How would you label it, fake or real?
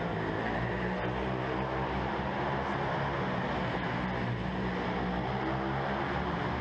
real